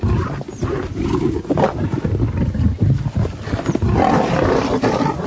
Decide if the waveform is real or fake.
real